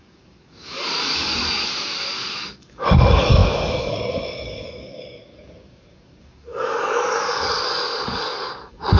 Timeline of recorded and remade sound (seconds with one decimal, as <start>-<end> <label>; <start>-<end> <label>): 0.0-9.0 remade